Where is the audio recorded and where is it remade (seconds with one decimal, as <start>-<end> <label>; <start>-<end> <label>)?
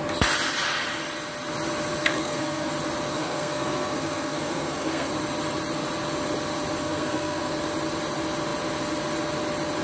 0.0-2.0 recorded; 2.0-2.7 remade; 2.7-3.1 recorded; 3.1-5.1 remade; 5.1-6.8 recorded; 6.8-7.6 remade; 7.6-9.8 recorded